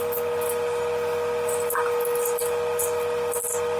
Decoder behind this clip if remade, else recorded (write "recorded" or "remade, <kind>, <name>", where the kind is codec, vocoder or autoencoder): recorded